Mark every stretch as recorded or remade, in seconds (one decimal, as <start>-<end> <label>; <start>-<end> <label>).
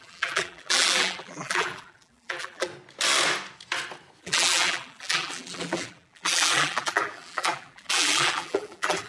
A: 0.0-2.7 remade; 2.7-4.2 recorded; 4.2-9.1 remade